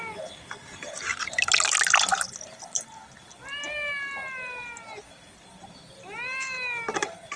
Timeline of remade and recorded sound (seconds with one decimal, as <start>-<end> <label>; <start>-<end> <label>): 0.0-7.4 recorded